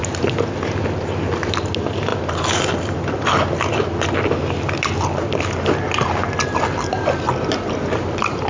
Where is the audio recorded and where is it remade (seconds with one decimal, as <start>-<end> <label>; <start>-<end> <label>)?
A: 0.0-8.5 recorded